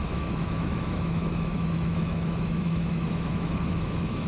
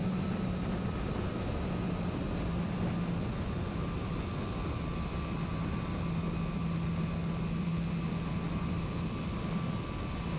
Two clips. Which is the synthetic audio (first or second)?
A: first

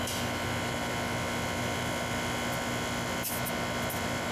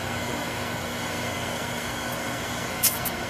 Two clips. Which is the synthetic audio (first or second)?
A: second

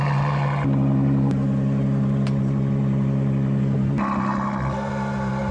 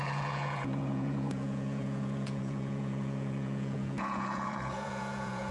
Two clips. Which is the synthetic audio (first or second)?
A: second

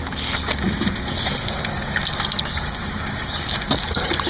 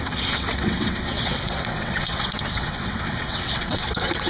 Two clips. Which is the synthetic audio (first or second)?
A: second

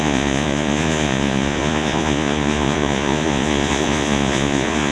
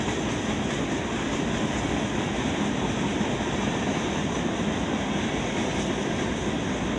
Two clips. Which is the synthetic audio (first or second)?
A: first